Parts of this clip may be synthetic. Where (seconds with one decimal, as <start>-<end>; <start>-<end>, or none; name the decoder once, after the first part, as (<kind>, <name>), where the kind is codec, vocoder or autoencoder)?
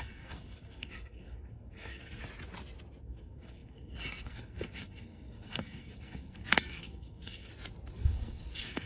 0.0-2.2 (codec, SNAC); 3.0-7.5; 8.0-8.9